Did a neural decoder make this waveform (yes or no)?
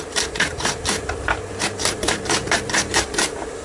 yes